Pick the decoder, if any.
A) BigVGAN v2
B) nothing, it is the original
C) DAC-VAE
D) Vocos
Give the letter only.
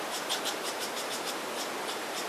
A